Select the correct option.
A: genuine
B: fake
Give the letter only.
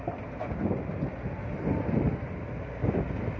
A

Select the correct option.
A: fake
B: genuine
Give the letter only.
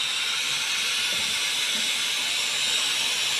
B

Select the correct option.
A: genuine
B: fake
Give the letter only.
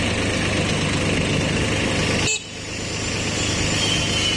A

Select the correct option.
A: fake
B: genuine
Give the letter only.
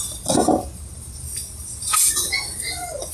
B